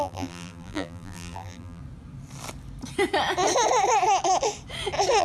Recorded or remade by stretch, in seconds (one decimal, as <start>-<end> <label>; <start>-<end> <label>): 0.0-1.8 remade; 1.8-5.2 recorded